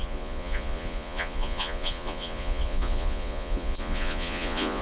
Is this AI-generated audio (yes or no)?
yes